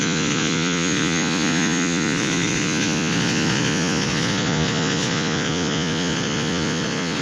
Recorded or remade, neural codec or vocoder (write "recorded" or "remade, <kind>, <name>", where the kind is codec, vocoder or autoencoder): remade, vocoder, Vocos